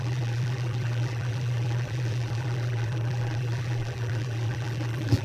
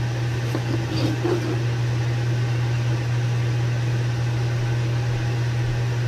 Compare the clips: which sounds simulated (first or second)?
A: first